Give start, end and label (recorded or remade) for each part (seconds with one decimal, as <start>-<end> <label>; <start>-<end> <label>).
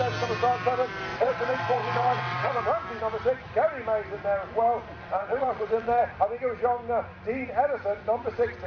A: 0.0-1.1 recorded; 1.1-2.6 remade; 2.6-5.0 recorded; 5.0-6.0 remade; 6.0-8.7 recorded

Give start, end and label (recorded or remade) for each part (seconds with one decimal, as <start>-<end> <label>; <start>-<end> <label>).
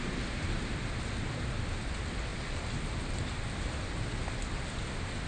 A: 0.0-5.3 recorded